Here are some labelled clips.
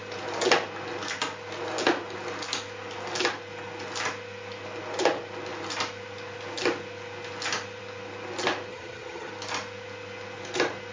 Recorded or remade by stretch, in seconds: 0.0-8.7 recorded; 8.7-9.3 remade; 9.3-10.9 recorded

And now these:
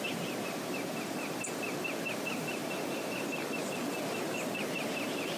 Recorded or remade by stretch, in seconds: 0.0-0.4 remade; 0.4-2.1 recorded; 2.1-2.6 remade; 2.6-3.6 recorded; 3.6-5.4 remade

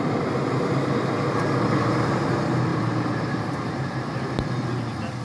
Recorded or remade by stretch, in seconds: 0.0-2.7 recorded; 2.7-4.3 remade; 4.3-5.2 recorded

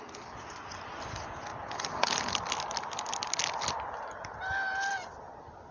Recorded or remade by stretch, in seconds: 0.0-5.7 recorded

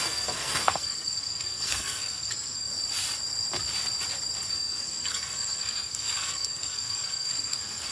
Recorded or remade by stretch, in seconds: 0.0-2.7 remade; 2.7-4.5 recorded; 4.5-7.9 remade